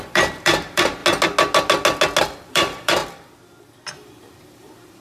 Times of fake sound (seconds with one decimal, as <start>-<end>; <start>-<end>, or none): 0.0-1.0; 2.2-3.0; 3.9-5.0